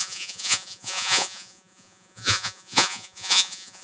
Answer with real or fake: fake